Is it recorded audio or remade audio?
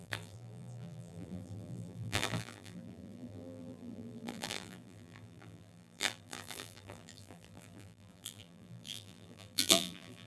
remade